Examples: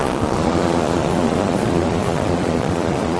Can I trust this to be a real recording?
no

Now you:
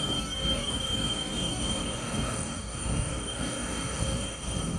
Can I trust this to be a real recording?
no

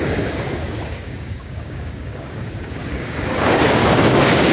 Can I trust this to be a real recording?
no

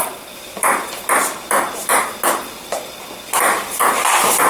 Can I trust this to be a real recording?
yes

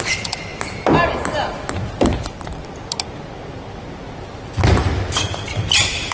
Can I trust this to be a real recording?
yes